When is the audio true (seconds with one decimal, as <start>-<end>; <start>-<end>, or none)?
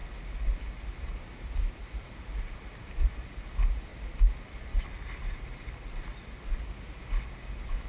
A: 0.0-1.0; 3.9-4.5; 6.1-7.9